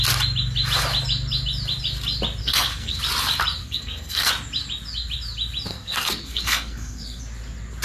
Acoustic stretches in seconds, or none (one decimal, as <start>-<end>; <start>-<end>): 0.0-2.4; 3.0-3.6; 4.3-5.7; 7.2-7.8